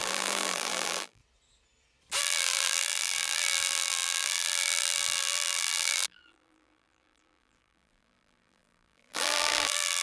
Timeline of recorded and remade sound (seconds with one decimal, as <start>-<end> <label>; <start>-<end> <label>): 0.0-1.2 remade; 1.2-2.2 recorded; 2.2-10.0 remade